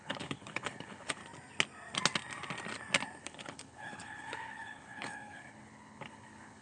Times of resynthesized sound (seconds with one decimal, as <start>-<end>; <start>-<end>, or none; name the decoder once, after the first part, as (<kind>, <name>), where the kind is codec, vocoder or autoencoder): 0.0-1.2 (codec, HILCodec); 3.2-6.6

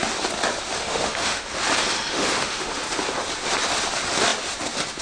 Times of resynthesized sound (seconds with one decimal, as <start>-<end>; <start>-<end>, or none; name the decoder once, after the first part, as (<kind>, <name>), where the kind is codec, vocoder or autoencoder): 0.8-1.5 (autoencoder, DAC-VAE); 2.1-2.8

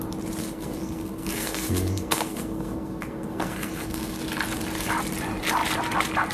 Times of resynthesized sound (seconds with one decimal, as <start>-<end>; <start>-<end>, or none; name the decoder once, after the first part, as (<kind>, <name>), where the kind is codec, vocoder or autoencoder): 0.4-4.2 (codec, SNAC)